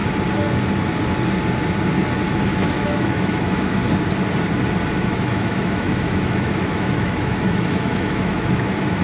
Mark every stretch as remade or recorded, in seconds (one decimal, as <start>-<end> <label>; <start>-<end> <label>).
0.0-2.4 recorded; 2.4-3.8 remade; 3.8-4.9 recorded; 4.9-9.0 remade